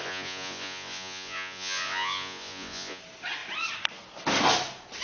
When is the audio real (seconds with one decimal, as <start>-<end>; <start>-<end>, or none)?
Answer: 3.0-5.0